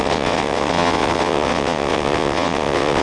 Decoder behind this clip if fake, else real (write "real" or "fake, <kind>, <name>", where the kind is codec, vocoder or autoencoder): fake, vocoder, WaveNeXt